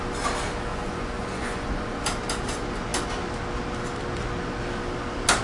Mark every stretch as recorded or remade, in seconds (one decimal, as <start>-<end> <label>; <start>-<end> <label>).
0.0-0.7 recorded; 0.7-2.0 remade; 2.0-5.4 recorded